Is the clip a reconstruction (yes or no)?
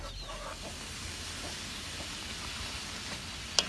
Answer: no